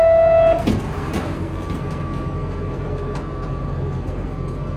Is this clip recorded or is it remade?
remade